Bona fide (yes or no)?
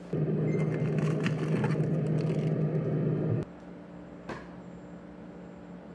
yes